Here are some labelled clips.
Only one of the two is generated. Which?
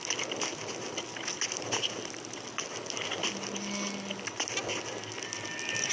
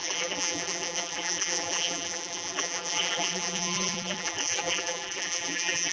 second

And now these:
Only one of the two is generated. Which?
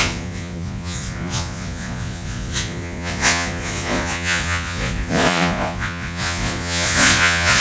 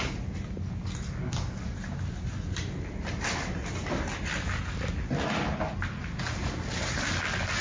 first